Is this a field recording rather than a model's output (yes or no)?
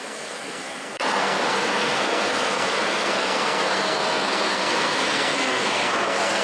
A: no